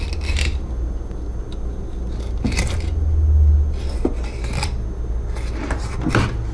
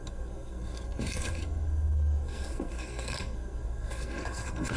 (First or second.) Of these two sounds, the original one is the first